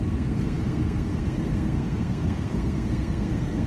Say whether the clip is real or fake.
fake